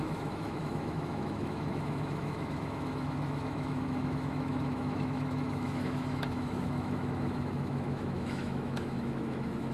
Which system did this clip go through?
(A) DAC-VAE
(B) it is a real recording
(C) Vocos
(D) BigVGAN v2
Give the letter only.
A